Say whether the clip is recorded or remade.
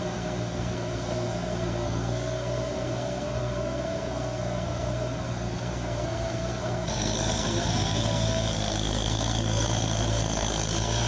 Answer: remade